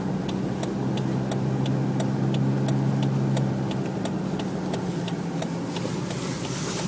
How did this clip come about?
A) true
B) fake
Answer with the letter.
A